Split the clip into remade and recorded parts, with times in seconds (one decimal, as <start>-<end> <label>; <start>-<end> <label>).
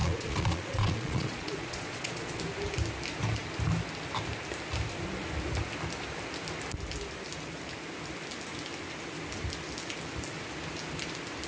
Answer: 0.0-2.4 remade; 2.4-11.5 recorded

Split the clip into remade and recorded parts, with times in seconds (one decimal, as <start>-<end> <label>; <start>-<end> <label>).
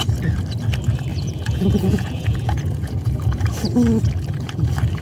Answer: 0.0-1.1 recorded; 1.1-3.4 remade; 3.4-5.0 recorded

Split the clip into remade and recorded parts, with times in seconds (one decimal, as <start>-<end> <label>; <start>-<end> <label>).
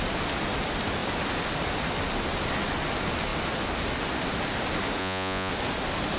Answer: 0.0-5.0 recorded; 5.0-5.5 remade; 5.5-6.2 recorded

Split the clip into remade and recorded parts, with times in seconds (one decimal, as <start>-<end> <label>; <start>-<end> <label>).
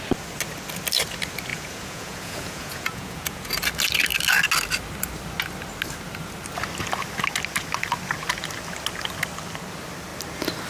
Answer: 0.0-1.5 recorded; 1.5-3.5 remade; 3.5-10.7 recorded